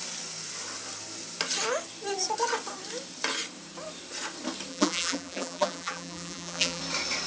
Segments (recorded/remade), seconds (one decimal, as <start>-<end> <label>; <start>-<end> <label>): 0.0-4.7 recorded; 4.7-6.8 remade; 6.8-7.3 recorded